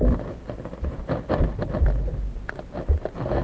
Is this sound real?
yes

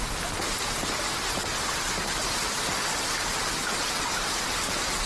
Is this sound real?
yes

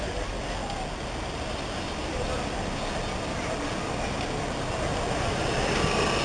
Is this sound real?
yes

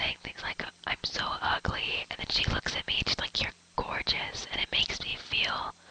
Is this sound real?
yes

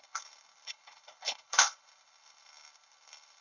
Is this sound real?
no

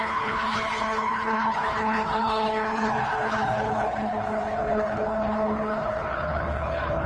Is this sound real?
no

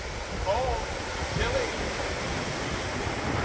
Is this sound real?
yes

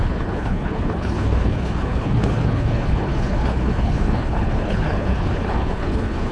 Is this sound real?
no